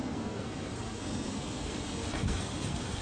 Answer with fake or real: fake